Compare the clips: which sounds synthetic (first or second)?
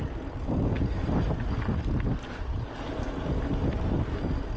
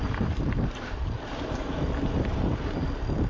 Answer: second